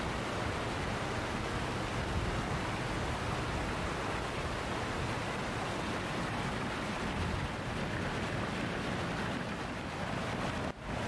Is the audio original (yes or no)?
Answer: yes